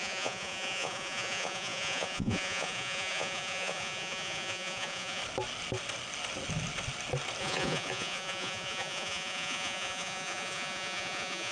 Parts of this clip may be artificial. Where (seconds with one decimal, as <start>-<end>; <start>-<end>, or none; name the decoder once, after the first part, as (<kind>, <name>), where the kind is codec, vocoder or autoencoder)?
0.0-5.2 (vocoder, Vocos); 7.4-11.5